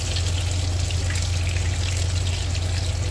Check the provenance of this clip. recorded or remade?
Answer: recorded